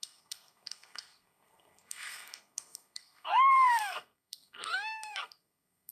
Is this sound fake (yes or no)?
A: yes